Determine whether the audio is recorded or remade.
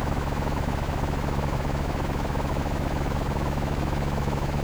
remade